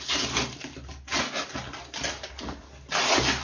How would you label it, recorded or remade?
recorded